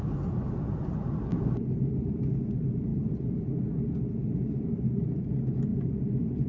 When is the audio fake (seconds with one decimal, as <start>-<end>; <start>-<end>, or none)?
1.3-1.9; 5.7-6.5